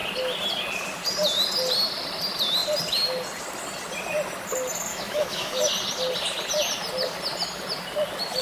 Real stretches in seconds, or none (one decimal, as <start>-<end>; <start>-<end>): 0.0-4.9; 5.6-8.4